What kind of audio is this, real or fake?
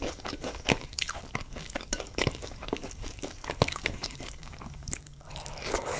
fake